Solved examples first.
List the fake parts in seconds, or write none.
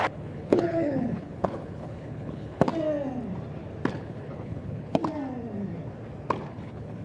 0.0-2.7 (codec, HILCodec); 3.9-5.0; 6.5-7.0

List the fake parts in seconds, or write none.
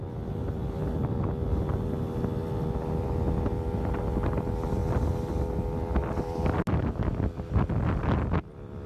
none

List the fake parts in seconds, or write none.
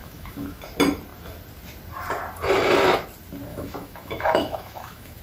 0.0-0.6 (autoencoder, DAC-VAE); 3.5-5.2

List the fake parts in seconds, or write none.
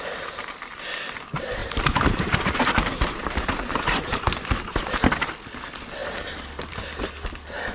1.6-5.0 (vocoder, BigVGAN v2); 6.0-6.7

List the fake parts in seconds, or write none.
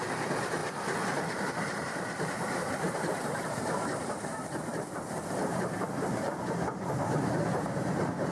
0.0-0.6 (vocoder, BigVGAN v2); 1.5-8.3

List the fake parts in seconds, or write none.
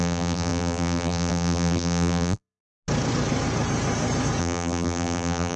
0.0-2.6 (vocoder, BigVGAN v2); 4.4-5.6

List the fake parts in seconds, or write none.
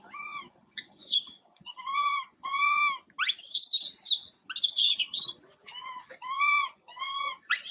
0.0-2.8 (vocoder, Vocos); 4.8-7.7